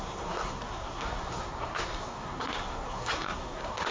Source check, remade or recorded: remade